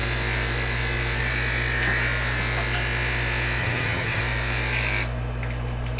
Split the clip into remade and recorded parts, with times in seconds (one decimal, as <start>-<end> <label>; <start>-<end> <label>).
0.0-3.6 recorded; 3.6-4.2 remade; 4.2-6.0 recorded